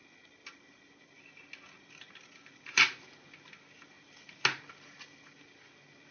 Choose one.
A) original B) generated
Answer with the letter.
A